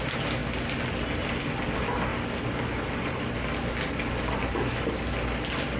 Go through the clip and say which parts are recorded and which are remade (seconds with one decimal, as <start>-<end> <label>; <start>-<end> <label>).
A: 0.0-5.8 recorded